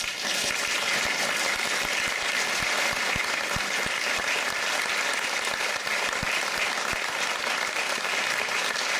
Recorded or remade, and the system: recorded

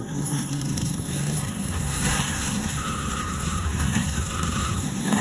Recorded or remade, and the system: remade, codec, SNAC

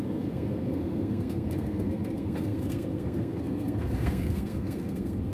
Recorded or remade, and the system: remade, codec, SNAC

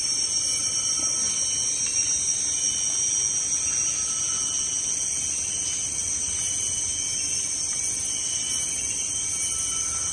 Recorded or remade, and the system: recorded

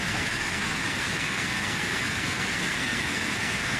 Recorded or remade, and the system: remade, codec, SNAC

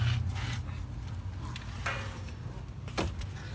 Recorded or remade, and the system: recorded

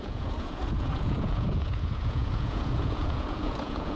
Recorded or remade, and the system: remade, vocoder, Vocos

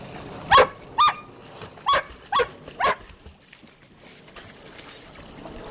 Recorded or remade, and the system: recorded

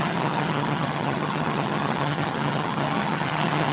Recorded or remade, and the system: remade, vocoder, HiFi-GAN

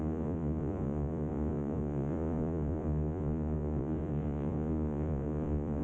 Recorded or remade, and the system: remade, vocoder, Vocos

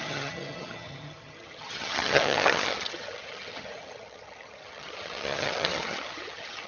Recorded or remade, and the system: remade, vocoder, HiFi-GAN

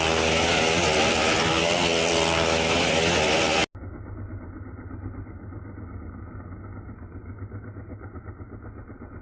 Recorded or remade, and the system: recorded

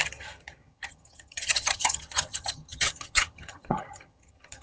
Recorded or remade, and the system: remade, vocoder, HiFi-GAN